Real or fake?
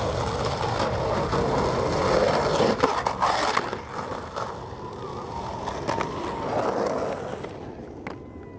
real